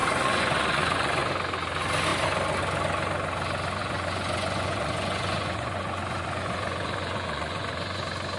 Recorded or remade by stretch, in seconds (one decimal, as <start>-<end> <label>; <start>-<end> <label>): 0.0-1.3 remade; 1.3-3.8 recorded; 3.8-8.0 remade; 8.0-8.4 recorded